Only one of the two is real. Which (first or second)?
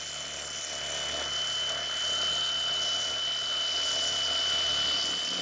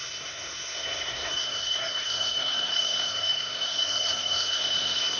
first